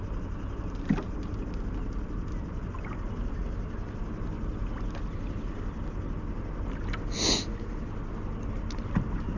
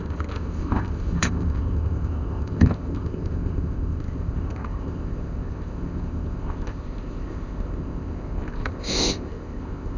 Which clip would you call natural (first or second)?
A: first